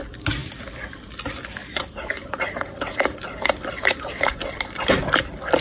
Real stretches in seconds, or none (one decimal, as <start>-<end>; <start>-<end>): 0.0-1.6; 5.0-5.6